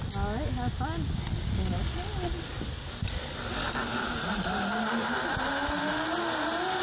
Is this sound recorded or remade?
recorded